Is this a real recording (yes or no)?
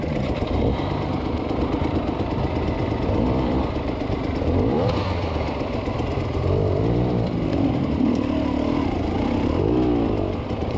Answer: no